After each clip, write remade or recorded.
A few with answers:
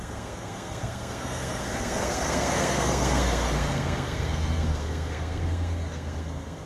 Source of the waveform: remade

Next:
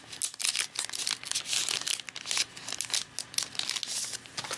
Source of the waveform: recorded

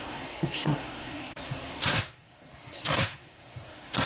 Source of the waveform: remade